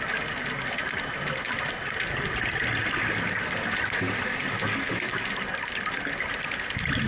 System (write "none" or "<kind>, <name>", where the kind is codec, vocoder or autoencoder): none